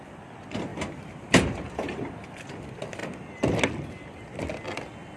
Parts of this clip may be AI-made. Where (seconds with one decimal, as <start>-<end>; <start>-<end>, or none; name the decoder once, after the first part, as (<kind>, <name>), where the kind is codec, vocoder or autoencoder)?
0.7-2.4 (vocoder, BigVGAN v2)

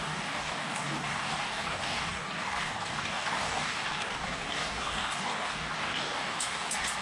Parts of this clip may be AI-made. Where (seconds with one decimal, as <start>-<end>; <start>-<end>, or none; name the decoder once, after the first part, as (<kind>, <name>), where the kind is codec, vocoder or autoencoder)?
0.0-7.0 (codec, DAC)

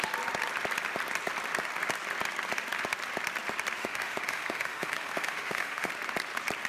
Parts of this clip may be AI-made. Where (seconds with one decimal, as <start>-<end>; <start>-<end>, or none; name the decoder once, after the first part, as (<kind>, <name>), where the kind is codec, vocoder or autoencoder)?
3.8-5.9 (autoencoder, DAC-VAE)